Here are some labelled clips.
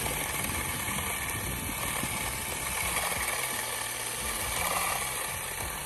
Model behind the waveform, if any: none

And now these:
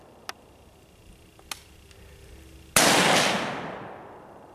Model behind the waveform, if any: none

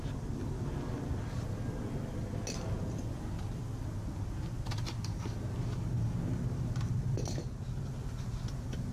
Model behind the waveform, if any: none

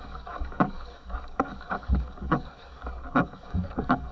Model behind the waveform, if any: codec, DAC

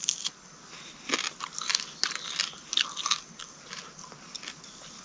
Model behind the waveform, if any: none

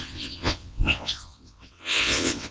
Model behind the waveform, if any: vocoder, WaveNeXt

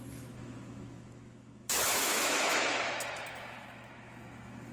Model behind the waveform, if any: autoencoder, DAC-VAE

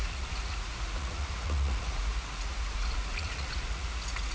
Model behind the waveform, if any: vocoder, Vocos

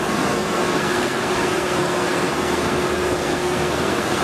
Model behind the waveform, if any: codec, SNAC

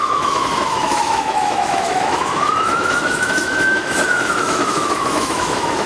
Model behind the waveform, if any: autoencoder, DAC-VAE